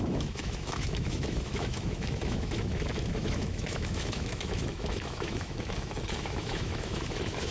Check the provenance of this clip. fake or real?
fake